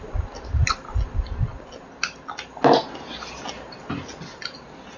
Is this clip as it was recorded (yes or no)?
yes